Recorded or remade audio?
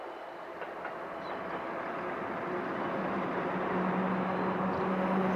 recorded